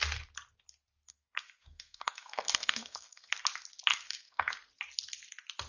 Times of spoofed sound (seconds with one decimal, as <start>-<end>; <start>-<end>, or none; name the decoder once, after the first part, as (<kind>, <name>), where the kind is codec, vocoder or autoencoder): 1.1-3.3 (codec, SNAC); 3.9-4.5